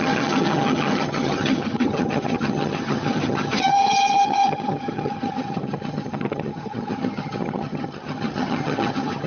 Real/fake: fake